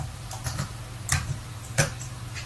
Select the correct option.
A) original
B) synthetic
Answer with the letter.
B